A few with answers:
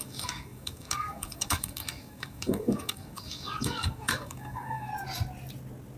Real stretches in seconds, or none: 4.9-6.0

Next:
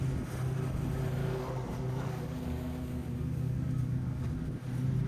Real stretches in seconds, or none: 0.0-1.2; 4.3-5.1

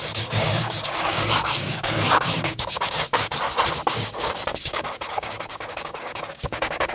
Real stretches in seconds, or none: 3.3-3.9

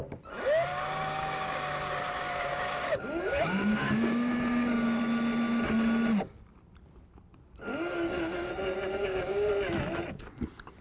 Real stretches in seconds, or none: 0.0-0.7; 5.0-7.7; 8.5-8.9; 9.5-10.8